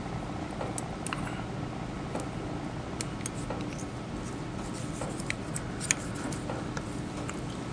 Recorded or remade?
recorded